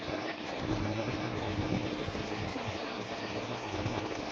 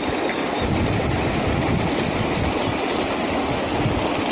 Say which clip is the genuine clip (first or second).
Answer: second